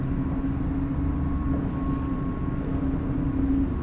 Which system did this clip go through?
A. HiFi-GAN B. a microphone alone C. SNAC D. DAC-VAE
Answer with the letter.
B